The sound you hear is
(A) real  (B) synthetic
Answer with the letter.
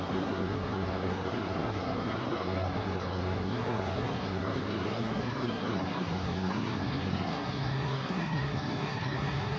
B